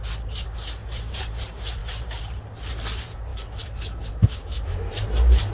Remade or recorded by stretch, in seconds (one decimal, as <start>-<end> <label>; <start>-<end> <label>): 0.0-3.3 recorded; 3.3-5.0 remade; 5.0-5.5 recorded